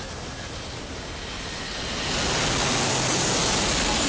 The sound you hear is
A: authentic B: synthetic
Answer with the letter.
A